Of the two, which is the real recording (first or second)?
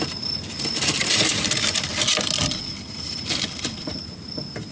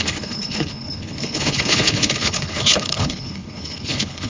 first